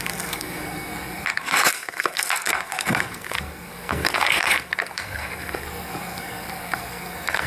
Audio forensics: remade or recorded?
remade